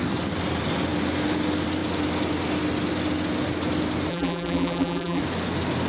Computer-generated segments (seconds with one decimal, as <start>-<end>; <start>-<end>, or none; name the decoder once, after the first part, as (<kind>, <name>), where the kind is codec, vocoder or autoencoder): 4.1-5.2 (vocoder, BigVGAN v2)